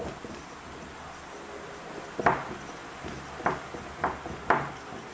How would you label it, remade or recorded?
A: recorded